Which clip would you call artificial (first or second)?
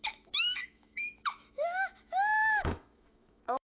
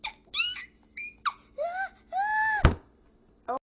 first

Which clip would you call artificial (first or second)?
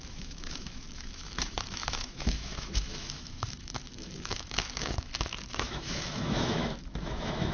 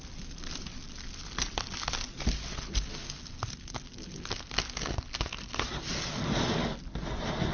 first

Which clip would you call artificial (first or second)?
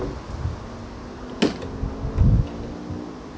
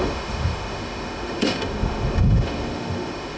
second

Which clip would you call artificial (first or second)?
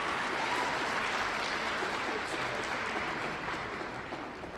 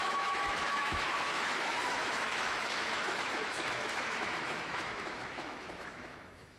second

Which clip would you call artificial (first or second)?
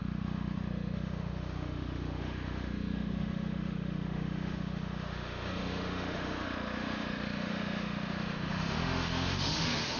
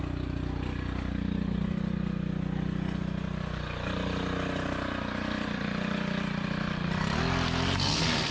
first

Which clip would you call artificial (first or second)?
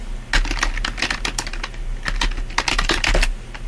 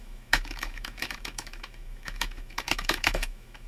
second